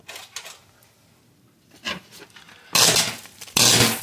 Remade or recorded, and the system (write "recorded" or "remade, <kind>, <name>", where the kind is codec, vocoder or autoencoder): recorded